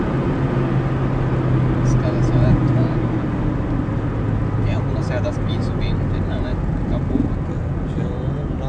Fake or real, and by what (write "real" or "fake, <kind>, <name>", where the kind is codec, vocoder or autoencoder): real